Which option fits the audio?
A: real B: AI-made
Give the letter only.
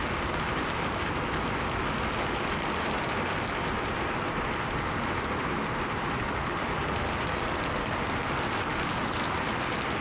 A